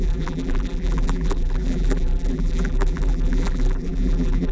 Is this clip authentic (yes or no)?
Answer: no